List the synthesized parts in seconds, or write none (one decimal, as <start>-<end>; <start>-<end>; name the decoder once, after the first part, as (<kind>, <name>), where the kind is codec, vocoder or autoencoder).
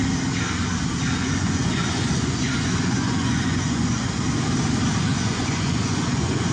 1.2-4.1 (vocoder, Vocos); 5.1-6.5